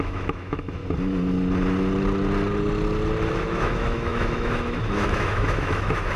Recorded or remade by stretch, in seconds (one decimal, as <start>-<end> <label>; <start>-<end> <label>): 0.0-0.8 remade; 0.8-3.3 recorded; 3.3-6.2 remade